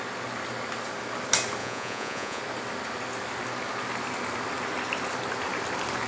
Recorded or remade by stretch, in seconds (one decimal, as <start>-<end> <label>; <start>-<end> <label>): 0.0-1.6 recorded; 1.6-2.4 remade; 2.4-6.1 recorded